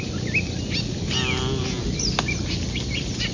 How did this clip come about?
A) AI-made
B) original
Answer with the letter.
B